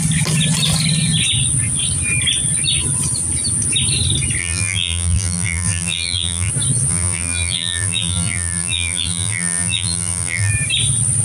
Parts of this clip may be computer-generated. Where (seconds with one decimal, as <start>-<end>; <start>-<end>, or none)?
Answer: 4.4-6.5; 6.9-10.5